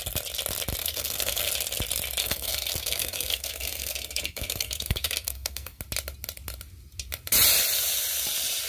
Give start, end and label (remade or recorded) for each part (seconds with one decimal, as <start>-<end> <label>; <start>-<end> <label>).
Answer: 0.0-0.8 recorded; 0.8-1.5 remade; 1.5-2.2 recorded; 2.2-5.8 remade; 5.8-8.7 recorded